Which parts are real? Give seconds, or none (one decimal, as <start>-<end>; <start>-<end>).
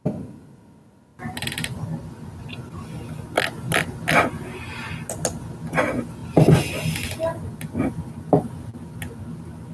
0.0-1.1; 2.4-9.7